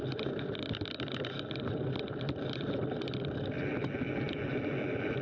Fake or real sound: fake